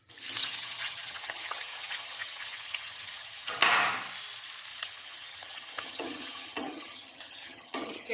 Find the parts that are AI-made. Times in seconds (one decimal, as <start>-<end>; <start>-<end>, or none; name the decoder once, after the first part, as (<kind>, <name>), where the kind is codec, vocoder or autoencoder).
0.4-3.6 (vocoder, HiFi-GAN); 4.7-8.1